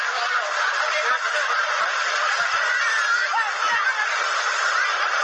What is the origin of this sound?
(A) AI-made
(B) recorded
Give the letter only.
A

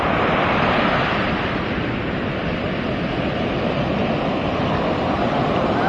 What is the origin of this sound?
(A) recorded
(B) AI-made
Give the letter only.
B